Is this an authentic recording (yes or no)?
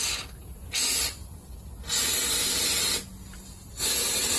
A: yes